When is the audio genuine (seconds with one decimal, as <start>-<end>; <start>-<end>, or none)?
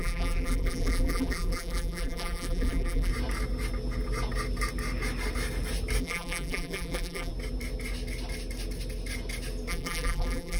3.1-6.0; 7.3-9.7